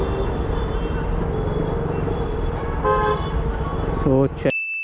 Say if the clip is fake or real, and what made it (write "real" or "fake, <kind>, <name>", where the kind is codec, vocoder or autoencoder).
real